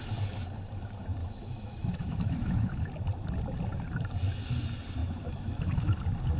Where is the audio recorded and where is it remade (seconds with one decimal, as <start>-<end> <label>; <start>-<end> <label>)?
0.0-1.2 recorded; 1.2-2.9 remade; 2.9-5.0 recorded; 5.0-6.0 remade; 6.0-6.4 recorded